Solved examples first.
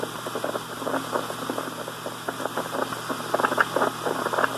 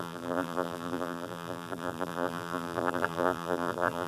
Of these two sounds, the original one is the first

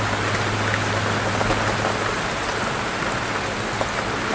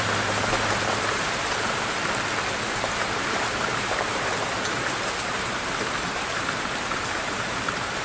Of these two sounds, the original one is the first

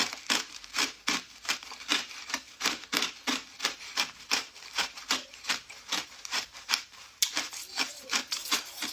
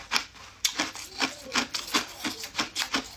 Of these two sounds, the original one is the second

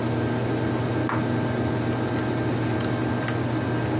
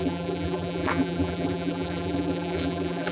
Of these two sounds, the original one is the first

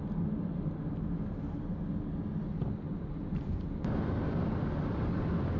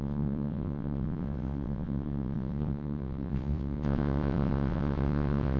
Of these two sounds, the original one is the first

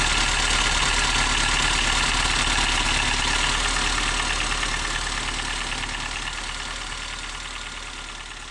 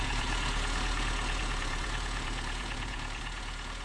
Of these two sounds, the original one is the first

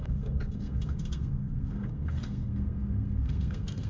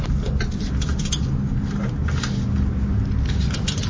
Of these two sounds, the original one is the second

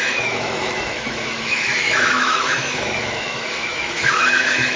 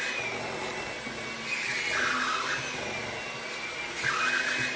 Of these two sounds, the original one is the second